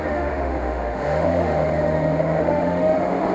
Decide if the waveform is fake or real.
fake